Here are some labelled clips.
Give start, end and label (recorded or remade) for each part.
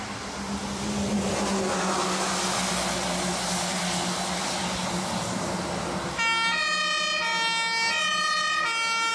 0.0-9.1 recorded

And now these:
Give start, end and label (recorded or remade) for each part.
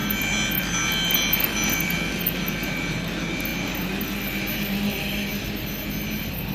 0.0-6.5 recorded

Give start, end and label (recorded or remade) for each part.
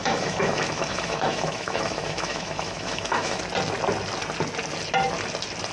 0.0-3.4 remade; 3.4-5.7 recorded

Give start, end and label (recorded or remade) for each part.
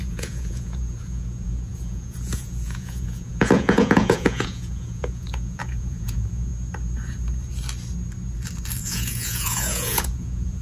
0.0-6.5 remade; 6.5-8.8 recorded; 8.8-10.6 remade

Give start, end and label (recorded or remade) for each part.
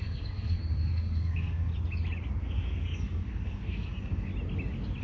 0.0-1.7 remade; 1.7-2.4 recorded; 2.4-4.3 remade; 4.3-5.0 recorded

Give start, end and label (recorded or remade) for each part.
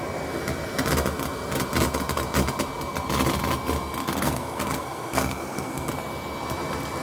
0.0-4.0 recorded; 4.0-5.9 remade; 5.9-7.0 recorded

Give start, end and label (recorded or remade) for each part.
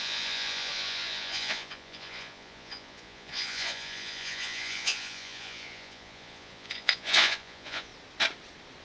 0.0-7.9 remade; 7.9-8.8 recorded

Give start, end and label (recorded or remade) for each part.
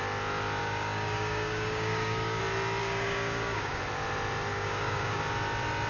0.0-0.6 recorded; 0.6-2.4 remade; 2.4-2.8 recorded; 2.8-3.8 remade; 3.8-4.5 recorded; 4.5-5.2 remade; 5.2-5.9 recorded